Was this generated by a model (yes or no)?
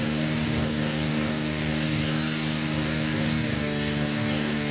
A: yes